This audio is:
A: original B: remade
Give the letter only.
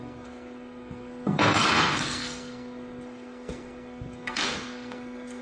B